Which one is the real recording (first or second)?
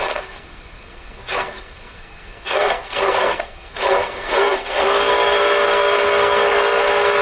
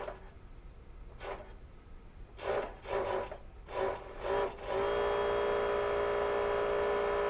second